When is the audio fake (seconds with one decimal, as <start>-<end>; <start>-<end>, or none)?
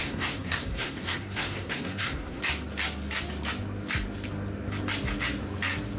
0.0-2.4